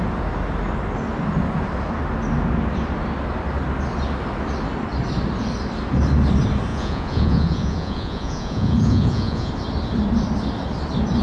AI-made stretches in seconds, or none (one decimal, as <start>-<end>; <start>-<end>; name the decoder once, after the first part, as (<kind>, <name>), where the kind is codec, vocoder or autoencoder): 6.7-9.5 (vocoder, Vocos)